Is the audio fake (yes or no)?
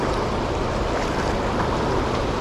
no